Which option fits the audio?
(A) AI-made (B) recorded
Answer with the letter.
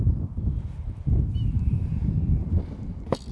B